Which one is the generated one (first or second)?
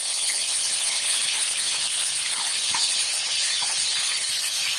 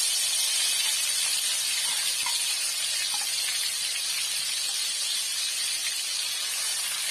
first